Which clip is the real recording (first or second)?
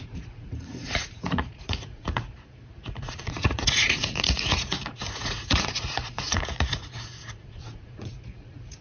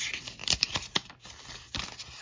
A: second